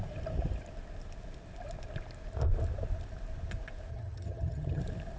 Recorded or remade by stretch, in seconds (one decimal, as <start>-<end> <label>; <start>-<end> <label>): 0.0-3.9 recorded; 3.9-4.8 remade; 4.8-5.2 recorded